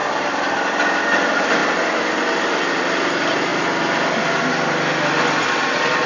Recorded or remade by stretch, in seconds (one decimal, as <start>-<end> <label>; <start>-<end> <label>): 0.0-6.1 recorded